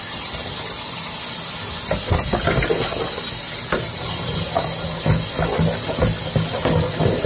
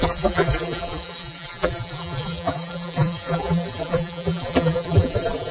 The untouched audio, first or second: first